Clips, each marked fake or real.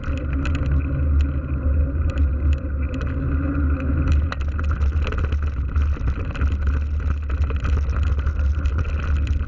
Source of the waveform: real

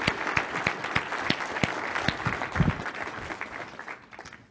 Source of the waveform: real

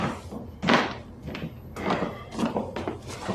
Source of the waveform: real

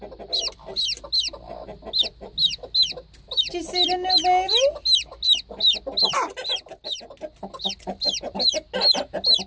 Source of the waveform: real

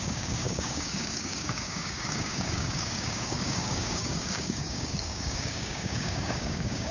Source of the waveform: fake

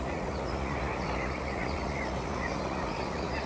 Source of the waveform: fake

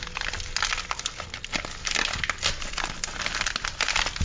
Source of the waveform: real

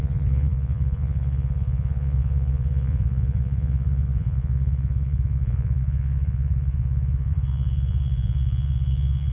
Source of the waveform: fake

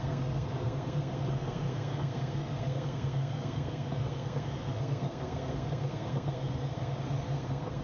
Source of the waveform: fake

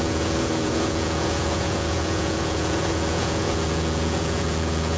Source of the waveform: fake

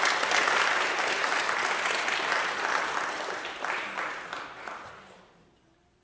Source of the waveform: real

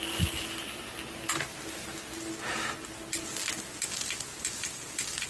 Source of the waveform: real